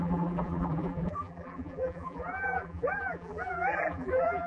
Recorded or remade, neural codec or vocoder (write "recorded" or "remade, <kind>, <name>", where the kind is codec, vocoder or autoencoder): remade, vocoder, BigVGAN v2